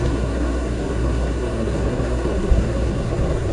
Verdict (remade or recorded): remade